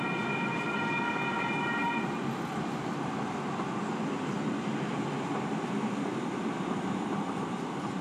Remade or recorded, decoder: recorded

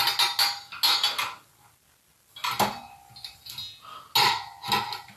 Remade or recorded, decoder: recorded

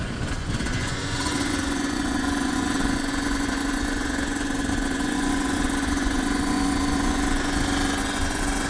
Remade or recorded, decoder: remade, vocoder, Vocos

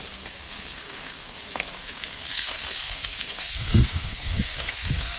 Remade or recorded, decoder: remade, codec, SNAC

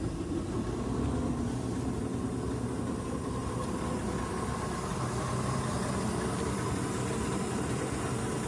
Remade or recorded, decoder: recorded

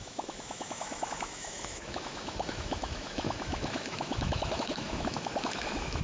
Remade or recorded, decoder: remade, autoencoder, DAC-VAE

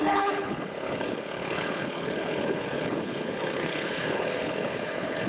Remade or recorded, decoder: remade, codec, HILCodec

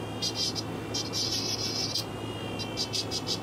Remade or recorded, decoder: recorded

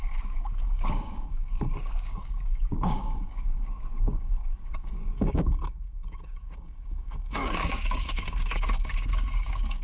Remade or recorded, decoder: remade, codec, DAC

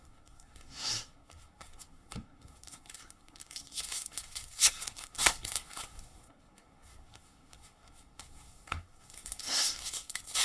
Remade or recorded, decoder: remade, codec, SNAC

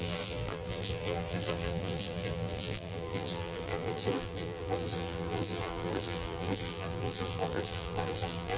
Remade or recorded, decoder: remade, vocoder, BigVGAN v2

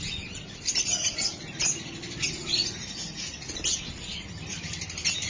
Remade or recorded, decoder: recorded